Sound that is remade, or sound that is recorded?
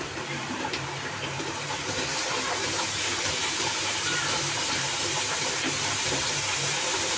remade